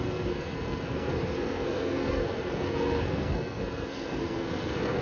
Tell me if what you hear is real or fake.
fake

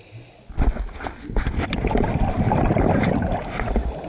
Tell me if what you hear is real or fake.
real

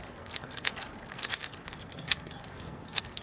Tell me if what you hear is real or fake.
fake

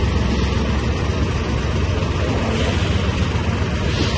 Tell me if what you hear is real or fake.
real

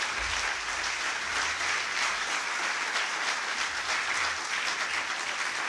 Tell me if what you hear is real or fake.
real